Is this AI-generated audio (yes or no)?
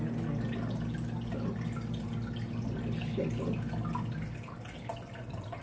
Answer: no